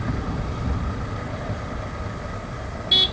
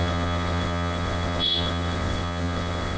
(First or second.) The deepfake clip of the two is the second